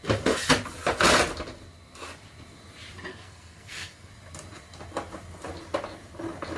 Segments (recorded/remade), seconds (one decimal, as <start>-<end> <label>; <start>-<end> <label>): 0.0-3.1 recorded; 3.1-4.1 remade; 4.1-6.6 recorded